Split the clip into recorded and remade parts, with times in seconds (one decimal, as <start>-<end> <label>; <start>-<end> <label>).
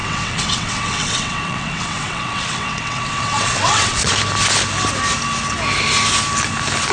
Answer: 0.0-4.1 remade; 4.1-6.9 recorded